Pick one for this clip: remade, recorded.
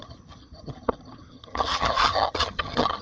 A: remade